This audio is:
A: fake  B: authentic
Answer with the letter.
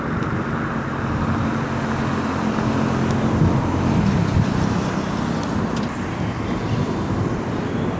B